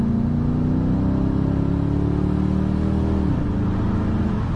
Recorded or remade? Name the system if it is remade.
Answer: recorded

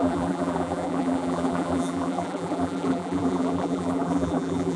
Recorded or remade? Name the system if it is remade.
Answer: remade, vocoder, BigVGAN v2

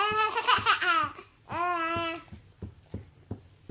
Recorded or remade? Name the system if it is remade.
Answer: recorded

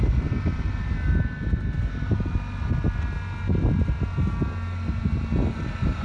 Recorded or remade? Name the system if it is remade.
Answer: recorded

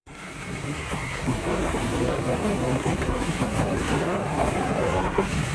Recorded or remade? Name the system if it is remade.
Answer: remade, codec, SNAC